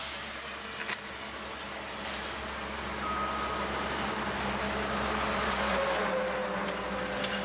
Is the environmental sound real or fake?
real